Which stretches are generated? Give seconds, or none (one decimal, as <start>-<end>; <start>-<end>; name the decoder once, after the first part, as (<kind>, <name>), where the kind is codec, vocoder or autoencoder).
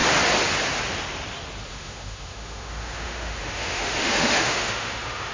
1.7-5.3 (autoencoder, DAC-VAE)